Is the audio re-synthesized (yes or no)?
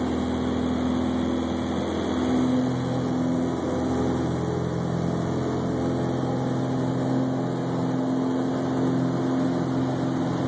no